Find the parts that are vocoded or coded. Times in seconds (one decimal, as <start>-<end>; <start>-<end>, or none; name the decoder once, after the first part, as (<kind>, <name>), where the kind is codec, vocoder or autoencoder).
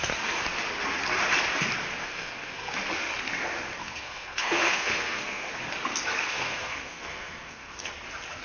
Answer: 2.0-2.7 (codec, SNAC); 3.8-5.5; 6.2-7.9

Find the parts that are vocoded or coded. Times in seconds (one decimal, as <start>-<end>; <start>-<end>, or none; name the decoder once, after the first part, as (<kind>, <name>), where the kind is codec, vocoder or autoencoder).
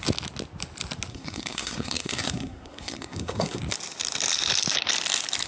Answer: 1.1-3.6 (codec, SNAC)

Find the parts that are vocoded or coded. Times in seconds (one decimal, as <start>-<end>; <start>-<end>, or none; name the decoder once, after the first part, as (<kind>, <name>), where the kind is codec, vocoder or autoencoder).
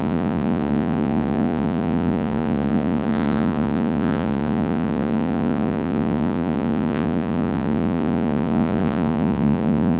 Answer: 0.0-10.0 (vocoder, Vocos)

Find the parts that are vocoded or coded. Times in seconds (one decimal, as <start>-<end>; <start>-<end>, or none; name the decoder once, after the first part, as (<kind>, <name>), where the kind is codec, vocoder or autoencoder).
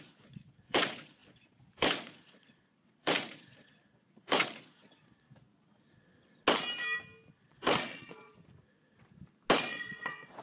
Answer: 0.0-6.1 (vocoder, Vocos); 7.3-8.4; 9.6-10.4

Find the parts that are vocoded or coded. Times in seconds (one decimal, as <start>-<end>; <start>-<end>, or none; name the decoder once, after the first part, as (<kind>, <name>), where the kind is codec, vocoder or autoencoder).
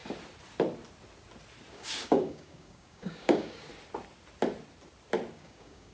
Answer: 1.7-3.7 (codec, DAC); 5.3-5.9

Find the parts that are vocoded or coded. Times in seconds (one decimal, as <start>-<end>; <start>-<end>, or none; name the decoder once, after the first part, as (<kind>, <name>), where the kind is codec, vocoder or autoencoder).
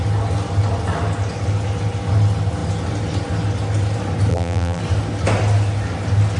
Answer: 4.3-4.8 (vocoder, BigVGAN v2)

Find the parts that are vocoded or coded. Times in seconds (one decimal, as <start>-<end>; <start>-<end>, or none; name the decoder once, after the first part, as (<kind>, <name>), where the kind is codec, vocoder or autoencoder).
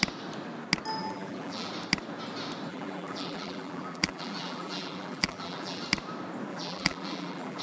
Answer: 1.0-1.7 (vocoder, BigVGAN v2); 2.7-5.8; 6.5-7.6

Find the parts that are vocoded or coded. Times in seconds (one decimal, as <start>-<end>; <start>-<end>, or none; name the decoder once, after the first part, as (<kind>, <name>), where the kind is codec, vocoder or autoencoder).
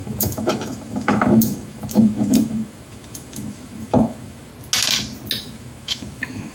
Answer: 0.0-4.5 (autoencoder, DAC-VAE); 5.4-6.5